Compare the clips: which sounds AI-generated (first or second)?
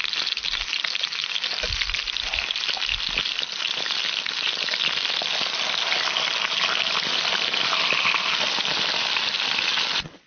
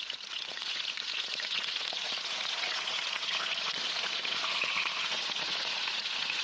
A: second